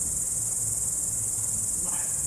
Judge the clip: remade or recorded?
recorded